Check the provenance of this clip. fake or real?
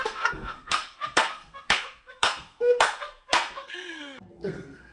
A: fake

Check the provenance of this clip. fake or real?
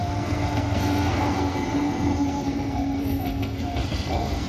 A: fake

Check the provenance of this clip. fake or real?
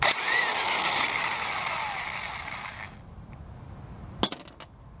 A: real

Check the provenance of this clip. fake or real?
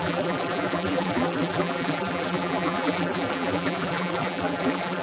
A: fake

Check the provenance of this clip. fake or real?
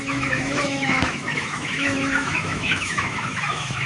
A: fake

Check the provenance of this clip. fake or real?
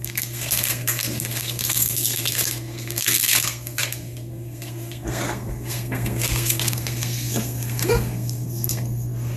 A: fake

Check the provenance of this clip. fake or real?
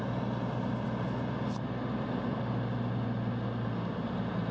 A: real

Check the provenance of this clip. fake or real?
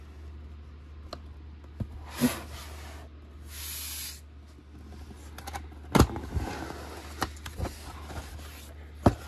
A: real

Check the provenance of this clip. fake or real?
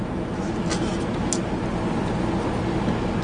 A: real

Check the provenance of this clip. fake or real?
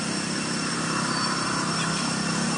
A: real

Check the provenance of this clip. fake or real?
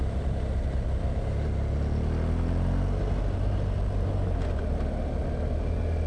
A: real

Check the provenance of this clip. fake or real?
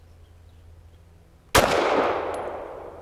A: real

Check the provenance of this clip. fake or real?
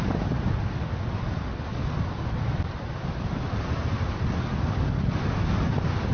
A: real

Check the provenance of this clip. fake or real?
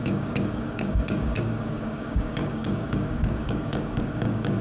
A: fake